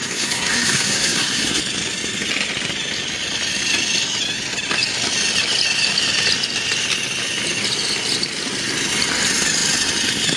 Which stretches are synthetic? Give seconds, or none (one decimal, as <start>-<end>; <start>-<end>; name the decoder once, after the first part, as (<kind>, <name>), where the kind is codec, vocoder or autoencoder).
0.0-1.6 (codec, SNAC)